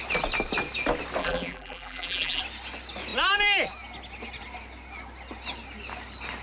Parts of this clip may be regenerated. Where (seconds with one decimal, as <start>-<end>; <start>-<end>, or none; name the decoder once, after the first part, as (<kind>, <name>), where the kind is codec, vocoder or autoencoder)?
1.2-2.4 (vocoder, BigVGAN v2)